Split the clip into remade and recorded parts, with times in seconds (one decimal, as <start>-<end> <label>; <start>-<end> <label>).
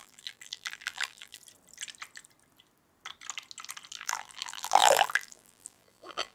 0.0-1.4 remade; 1.4-3.9 recorded; 3.9-6.3 remade